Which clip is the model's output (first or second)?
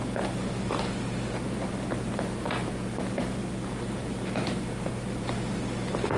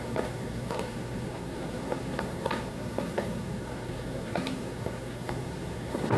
second